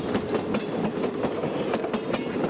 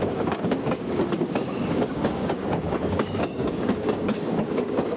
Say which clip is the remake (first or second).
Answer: second